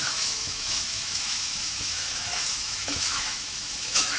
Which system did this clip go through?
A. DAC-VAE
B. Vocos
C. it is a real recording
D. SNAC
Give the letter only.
A